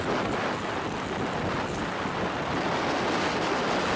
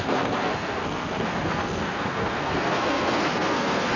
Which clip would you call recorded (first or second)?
first